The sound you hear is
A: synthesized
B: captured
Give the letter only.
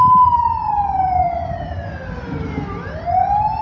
B